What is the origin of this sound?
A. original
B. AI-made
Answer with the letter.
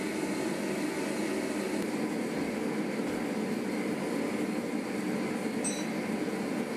A